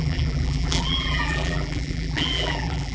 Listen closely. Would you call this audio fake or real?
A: fake